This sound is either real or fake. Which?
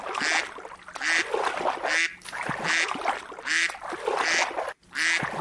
real